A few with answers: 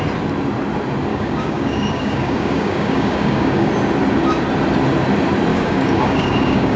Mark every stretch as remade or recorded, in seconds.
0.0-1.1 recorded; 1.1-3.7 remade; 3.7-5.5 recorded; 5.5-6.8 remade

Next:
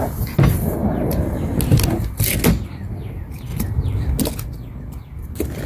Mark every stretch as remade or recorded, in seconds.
0.0-5.7 recorded

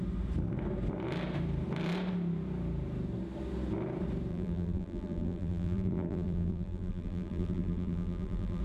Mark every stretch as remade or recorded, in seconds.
0.0-4.3 recorded; 4.3-8.6 remade

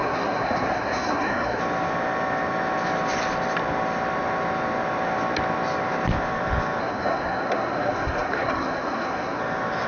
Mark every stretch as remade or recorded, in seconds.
0.0-1.6 remade; 1.6-6.8 recorded; 6.8-9.4 remade; 9.4-9.9 recorded

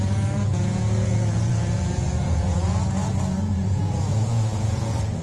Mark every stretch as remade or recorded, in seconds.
0.0-5.2 remade

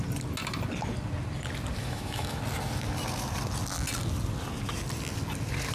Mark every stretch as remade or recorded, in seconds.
0.0-1.8 recorded; 1.8-2.4 remade; 2.4-5.7 recorded